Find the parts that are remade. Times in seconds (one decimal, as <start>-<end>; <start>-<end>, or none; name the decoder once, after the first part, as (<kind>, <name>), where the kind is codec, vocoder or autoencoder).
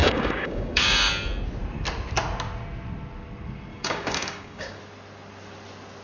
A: 0.0-1.1 (codec, DAC); 3.7-4.8